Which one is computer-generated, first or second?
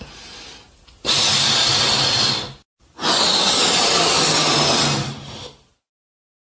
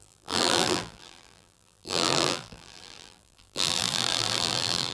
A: second